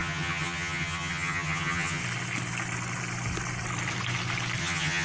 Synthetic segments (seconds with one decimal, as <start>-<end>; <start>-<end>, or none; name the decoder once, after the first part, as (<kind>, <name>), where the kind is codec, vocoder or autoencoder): 0.0-2.0 (vocoder, HiFi-GAN); 4.6-5.0